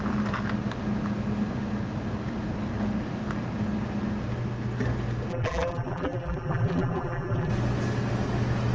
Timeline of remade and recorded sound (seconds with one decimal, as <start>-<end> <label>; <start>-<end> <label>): 0.0-5.3 recorded; 5.3-7.5 remade; 7.5-8.7 recorded